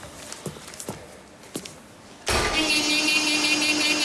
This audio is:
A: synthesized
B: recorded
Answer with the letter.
B